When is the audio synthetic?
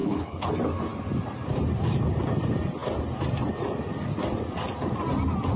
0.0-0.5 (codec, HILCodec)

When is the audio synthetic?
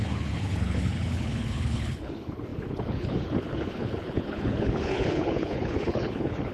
0.0-6.5 (codec, HILCodec)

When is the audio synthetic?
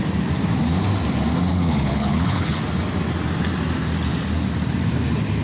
1.5-2.6 (codec, HILCodec)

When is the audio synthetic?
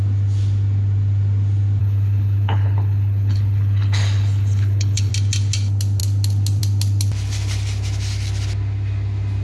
1.8-5.1 (codec, HILCodec)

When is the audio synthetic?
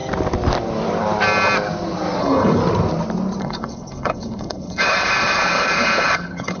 2.2-2.6 (codec, HILCodec); 3.4-6.6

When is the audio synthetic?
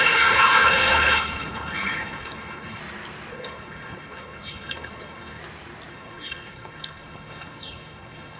0.0-2.8 (codec, HILCodec); 3.3-5.4; 5.9-8.4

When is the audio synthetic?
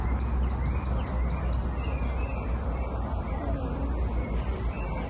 none